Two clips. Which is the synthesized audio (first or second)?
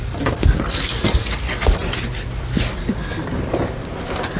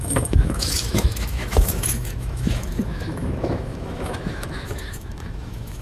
second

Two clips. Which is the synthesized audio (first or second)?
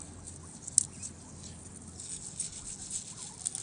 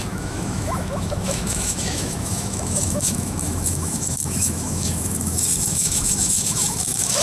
second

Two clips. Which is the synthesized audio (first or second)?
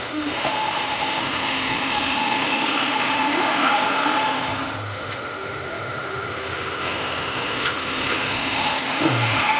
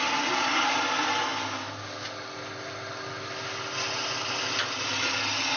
first